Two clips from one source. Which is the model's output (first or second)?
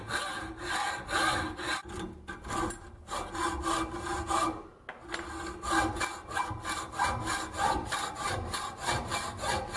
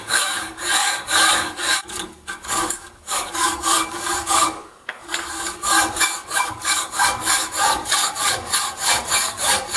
second